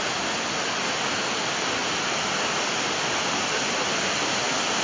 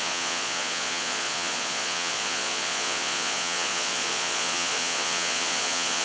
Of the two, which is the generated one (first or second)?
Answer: second